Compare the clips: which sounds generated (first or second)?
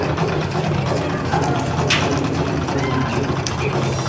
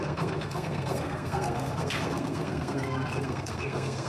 second